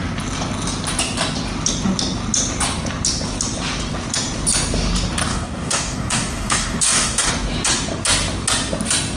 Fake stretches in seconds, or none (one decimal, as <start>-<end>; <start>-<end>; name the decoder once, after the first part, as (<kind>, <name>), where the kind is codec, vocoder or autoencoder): 5.3-7.3 (codec, DAC)